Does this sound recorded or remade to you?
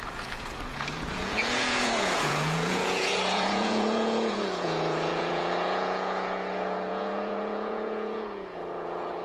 remade